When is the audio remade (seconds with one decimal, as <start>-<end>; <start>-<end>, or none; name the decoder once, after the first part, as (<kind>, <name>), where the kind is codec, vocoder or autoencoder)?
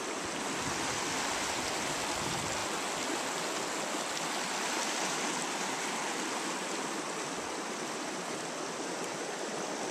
none